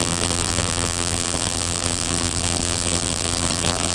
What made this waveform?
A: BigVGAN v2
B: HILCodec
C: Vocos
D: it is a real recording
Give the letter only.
A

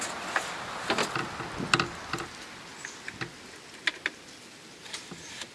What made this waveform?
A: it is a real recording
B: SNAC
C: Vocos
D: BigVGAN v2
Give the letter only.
A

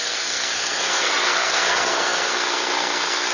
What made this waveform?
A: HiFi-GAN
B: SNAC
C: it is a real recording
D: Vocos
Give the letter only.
B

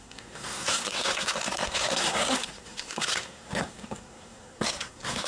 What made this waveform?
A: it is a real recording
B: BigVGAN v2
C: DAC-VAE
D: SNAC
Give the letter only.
D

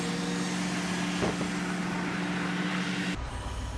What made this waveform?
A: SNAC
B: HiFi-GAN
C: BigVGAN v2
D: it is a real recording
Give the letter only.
D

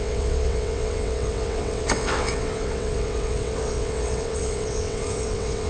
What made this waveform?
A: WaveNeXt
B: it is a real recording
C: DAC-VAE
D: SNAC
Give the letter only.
A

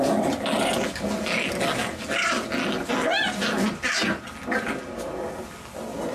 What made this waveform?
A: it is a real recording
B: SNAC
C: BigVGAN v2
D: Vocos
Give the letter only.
A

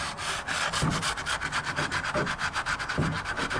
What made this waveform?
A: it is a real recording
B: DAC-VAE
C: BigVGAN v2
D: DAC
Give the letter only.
A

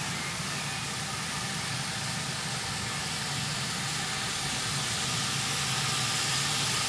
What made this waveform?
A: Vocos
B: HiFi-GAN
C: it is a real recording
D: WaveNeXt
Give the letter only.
C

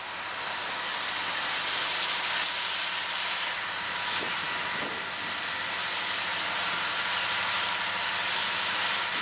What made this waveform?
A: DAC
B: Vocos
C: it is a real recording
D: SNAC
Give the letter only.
C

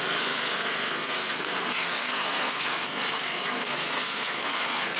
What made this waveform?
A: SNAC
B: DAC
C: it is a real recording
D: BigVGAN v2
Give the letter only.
A